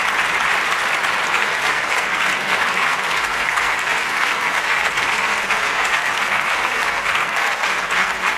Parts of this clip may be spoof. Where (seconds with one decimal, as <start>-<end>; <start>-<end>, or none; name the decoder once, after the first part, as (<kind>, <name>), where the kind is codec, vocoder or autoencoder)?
1.3-8.4 (codec, SNAC)